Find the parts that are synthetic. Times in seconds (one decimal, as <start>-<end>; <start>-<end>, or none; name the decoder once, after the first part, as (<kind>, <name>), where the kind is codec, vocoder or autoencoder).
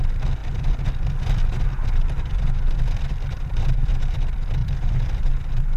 0.4-3.9 (vocoder, BigVGAN v2); 4.6-5.3